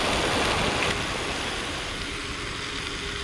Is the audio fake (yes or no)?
no